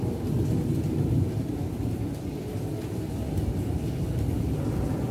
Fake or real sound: real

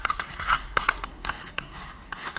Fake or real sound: fake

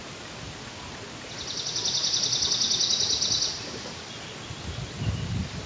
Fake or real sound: real